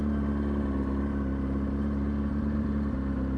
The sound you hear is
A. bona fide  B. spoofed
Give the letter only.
A